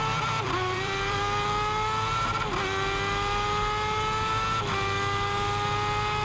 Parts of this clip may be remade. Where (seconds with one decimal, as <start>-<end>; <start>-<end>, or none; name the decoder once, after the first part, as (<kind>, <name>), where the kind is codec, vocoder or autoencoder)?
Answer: 0.0-1.2 (vocoder, BigVGAN v2)